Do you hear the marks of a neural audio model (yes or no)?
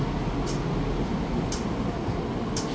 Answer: no